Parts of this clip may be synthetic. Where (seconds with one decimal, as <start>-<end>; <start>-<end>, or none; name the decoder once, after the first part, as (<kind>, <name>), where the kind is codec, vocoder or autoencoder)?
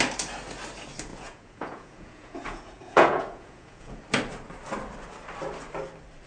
1.1-4.0 (vocoder, Vocos)